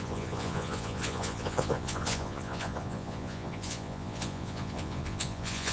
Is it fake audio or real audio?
fake